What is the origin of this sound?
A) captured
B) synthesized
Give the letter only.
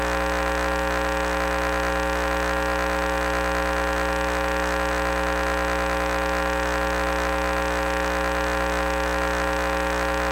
A